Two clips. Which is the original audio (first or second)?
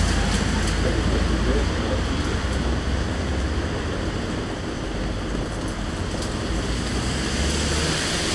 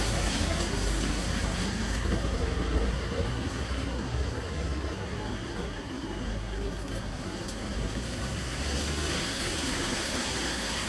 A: first